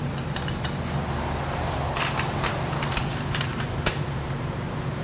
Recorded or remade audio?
remade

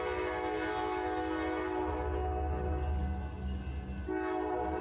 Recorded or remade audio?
recorded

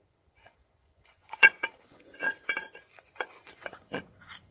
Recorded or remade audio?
remade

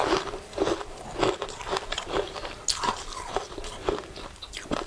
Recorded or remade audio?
recorded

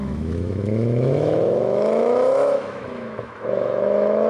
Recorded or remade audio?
remade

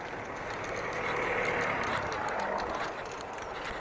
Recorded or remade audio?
recorded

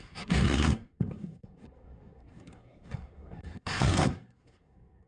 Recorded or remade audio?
remade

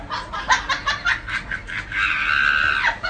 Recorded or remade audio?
recorded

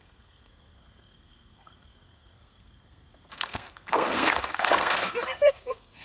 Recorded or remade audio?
remade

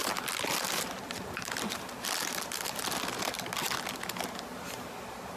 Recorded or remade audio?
recorded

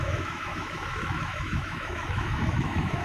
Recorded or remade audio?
remade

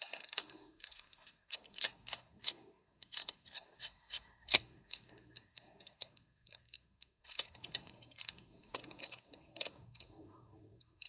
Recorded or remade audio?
remade